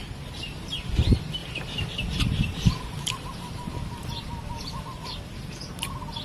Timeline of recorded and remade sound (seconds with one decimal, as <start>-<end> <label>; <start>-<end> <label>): 0.0-0.9 remade; 0.9-1.4 recorded; 1.4-3.7 remade; 3.7-6.2 recorded